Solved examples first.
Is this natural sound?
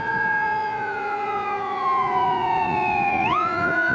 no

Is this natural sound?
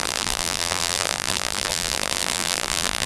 no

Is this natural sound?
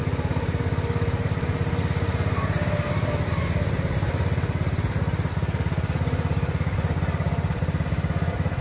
yes